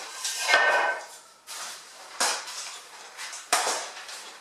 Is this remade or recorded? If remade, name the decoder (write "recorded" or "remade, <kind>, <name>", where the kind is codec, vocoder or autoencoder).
remade, vocoder, BigVGAN v2